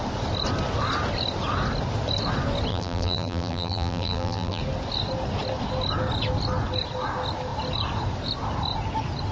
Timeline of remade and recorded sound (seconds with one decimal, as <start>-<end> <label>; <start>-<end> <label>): 0.0-2.7 recorded; 2.7-4.6 remade; 4.6-9.3 recorded

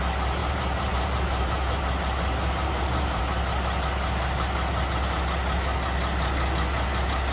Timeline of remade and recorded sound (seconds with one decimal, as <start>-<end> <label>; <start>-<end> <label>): 0.0-0.4 recorded; 0.4-1.8 remade; 1.8-2.4 recorded; 2.4-3.2 remade; 3.2-7.3 recorded

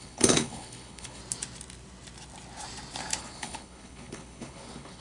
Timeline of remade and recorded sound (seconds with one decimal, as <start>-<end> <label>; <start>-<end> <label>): 0.0-1.2 remade; 1.2-3.2 recorded; 3.2-5.0 remade

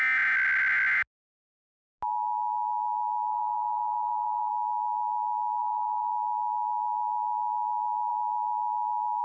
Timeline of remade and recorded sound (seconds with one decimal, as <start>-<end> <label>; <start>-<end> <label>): 0.0-3.3 recorded; 3.3-4.5 remade; 4.5-5.6 recorded; 5.6-6.1 remade; 6.1-9.2 recorded